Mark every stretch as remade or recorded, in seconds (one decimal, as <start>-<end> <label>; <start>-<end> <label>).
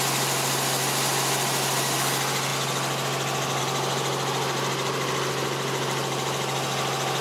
0.0-7.2 recorded